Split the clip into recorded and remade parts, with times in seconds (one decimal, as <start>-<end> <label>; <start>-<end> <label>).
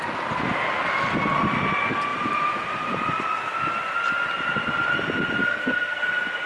0.0-5.5 recorded; 5.5-6.0 remade; 6.0-6.5 recorded